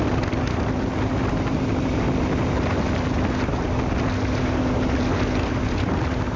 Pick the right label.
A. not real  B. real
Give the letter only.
B